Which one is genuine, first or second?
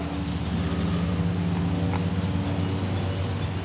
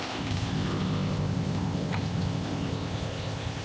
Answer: first